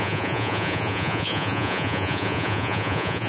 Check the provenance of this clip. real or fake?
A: fake